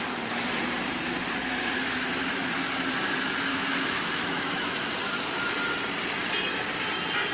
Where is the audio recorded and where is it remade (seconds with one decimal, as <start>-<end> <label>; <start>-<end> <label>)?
0.0-1.4 recorded; 1.4-2.5 remade; 2.5-3.5 recorded; 3.5-4.9 remade; 4.9-7.3 recorded